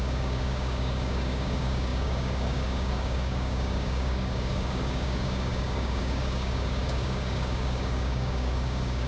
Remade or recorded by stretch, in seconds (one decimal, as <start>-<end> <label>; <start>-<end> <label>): 0.0-9.1 remade